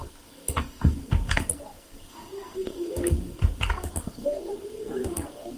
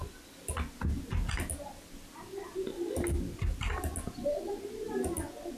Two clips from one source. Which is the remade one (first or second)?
first